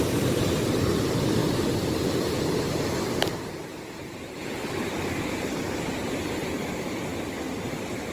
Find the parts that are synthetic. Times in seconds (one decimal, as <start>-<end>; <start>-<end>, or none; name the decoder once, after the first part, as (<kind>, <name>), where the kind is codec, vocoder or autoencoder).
1.4-6.0 (vocoder, BigVGAN v2)

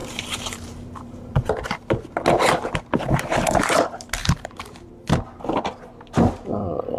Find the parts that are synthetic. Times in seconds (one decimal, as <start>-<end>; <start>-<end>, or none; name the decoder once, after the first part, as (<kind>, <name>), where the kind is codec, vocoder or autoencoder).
0.0-1.5 (vocoder, BigVGAN v2); 4.2-4.9

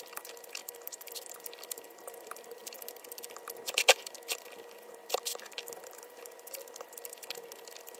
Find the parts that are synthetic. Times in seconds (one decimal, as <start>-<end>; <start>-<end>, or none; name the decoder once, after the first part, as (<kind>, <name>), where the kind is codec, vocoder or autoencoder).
0.0-7.5 (vocoder, BigVGAN v2)